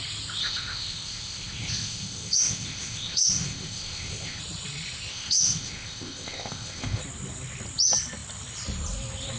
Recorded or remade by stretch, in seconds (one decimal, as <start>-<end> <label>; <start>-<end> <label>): 0.0-0.4 recorded; 0.4-4.4 remade; 4.4-5.1 recorded; 5.1-7.0 remade; 7.0-9.4 recorded